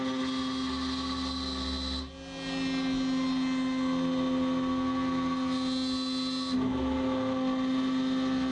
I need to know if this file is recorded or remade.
recorded